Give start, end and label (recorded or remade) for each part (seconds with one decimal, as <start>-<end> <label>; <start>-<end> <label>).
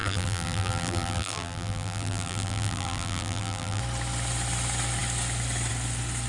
0.0-3.8 remade; 3.8-6.3 recorded